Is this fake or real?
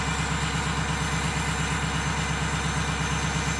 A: real